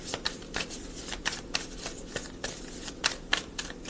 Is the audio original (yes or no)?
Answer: no